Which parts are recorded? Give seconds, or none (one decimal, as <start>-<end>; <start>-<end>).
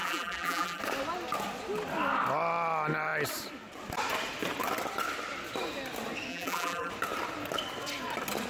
0.8-6.3; 6.9-8.5